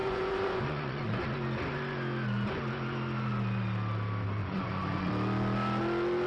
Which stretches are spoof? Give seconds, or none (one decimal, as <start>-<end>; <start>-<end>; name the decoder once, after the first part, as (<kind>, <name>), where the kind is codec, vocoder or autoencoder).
0.0-1.2 (vocoder, Vocos); 4.4-5.1